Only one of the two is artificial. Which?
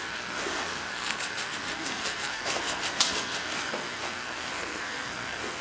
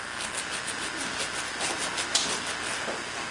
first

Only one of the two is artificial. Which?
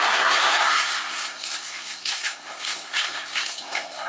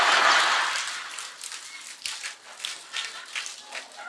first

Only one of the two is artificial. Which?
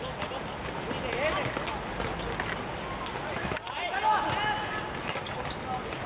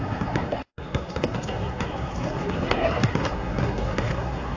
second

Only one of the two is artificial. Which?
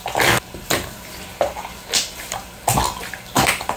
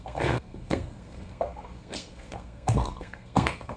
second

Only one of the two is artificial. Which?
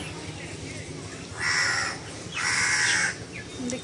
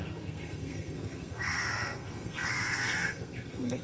second